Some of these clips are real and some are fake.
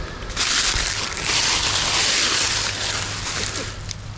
real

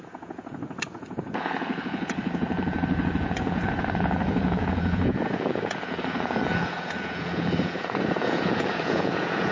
fake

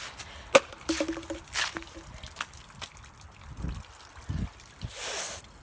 real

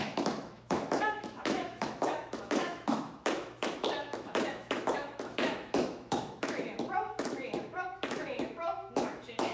fake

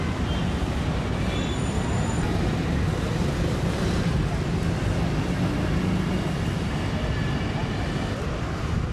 real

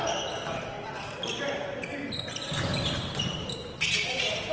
real